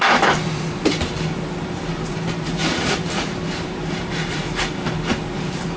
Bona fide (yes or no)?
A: no